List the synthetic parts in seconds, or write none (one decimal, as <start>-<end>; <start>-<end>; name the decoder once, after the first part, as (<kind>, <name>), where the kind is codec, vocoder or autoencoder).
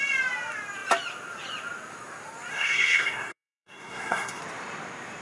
2.5-4.4 (codec, SNAC)